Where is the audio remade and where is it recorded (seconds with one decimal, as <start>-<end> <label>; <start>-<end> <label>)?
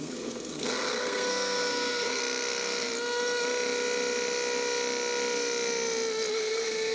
0.0-2.2 remade; 2.2-6.3 recorded; 6.3-6.9 remade